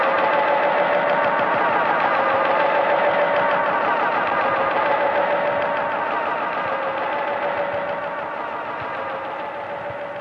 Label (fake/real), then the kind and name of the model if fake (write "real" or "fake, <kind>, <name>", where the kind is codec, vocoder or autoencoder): real